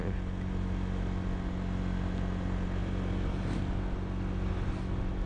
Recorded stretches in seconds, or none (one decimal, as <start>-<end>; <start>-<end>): 0.0-5.3